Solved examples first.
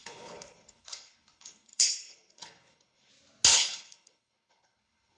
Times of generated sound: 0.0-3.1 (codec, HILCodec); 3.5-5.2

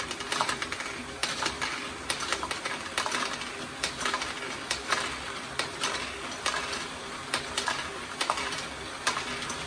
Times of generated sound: none

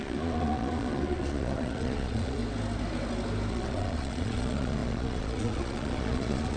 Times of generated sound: 0.0-2.4 (vocoder, Vocos); 3.5-6.6

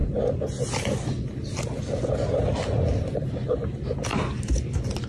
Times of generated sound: none

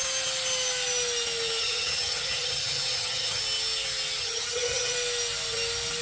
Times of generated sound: 1.6-3.4 (vocoder, HiFi-GAN); 4.2-4.9

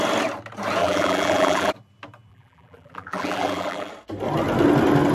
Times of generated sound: 0.8-1.7 (vocoder, BigVGAN v2); 2.3-3.9